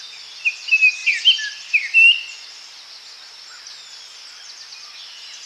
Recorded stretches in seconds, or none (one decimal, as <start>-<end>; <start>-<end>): 0.0-5.5